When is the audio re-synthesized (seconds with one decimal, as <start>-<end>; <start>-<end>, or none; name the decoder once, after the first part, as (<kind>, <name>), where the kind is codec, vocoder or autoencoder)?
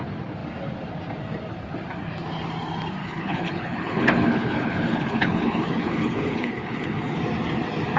3.0-7.2 (codec, HILCodec)